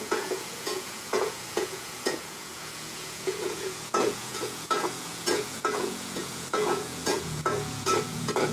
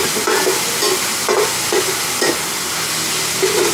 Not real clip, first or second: first